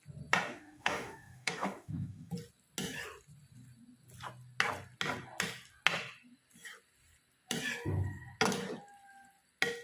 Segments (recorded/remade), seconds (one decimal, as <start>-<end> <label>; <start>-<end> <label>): 0.0-0.5 recorded; 0.5-2.3 remade; 2.3-9.8 recorded